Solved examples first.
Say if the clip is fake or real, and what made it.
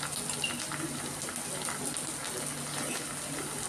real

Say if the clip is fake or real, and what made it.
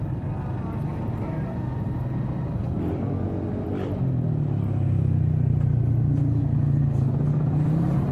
real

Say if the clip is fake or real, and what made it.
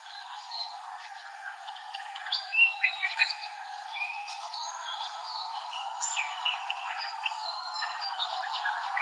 fake, codec, SNAC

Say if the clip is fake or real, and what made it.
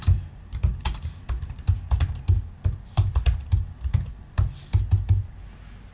real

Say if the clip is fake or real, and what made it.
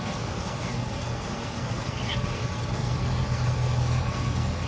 fake, codec, SNAC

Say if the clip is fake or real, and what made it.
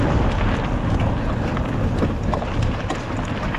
real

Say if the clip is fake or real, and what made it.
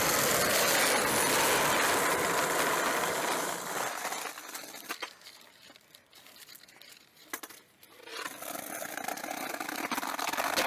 real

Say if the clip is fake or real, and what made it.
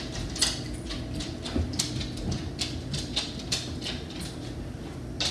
real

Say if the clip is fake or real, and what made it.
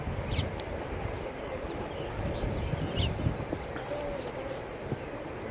real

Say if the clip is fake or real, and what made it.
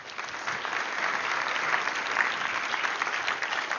real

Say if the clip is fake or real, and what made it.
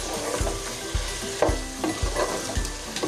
real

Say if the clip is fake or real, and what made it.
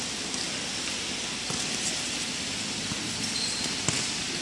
real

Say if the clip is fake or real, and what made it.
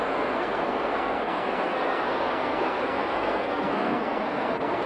fake, codec, SNAC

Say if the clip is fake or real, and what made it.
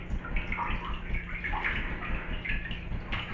real